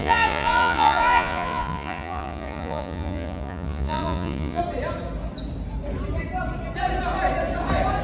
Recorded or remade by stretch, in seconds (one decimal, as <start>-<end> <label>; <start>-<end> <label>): 0.0-4.6 remade; 4.6-8.0 recorded